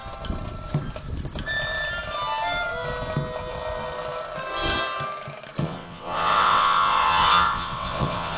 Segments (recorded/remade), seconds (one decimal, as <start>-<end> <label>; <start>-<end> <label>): 0.0-5.6 recorded; 5.6-8.4 remade